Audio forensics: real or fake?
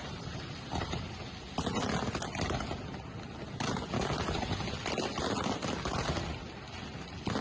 real